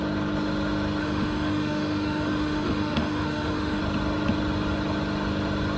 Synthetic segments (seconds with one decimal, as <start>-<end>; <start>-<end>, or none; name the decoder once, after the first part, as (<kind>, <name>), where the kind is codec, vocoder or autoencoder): 1.0-3.8 (autoencoder, DAC-VAE)